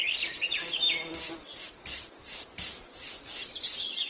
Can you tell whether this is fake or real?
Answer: real